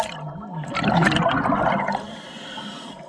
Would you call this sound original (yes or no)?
yes